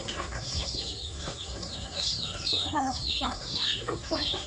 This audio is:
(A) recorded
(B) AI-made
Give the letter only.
B